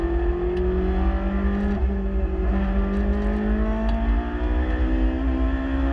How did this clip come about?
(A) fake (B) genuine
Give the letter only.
B